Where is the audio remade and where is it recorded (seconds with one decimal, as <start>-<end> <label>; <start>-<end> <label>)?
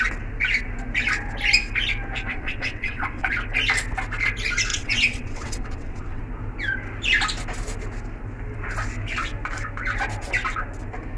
0.0-2.3 recorded; 2.3-3.3 remade; 3.3-4.7 recorded; 4.7-6.2 remade; 6.2-11.2 recorded